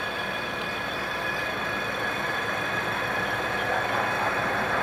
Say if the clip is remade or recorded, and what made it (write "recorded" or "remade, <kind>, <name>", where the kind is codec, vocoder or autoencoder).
remade, vocoder, BigVGAN v2